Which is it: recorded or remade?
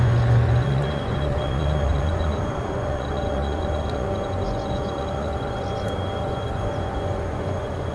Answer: remade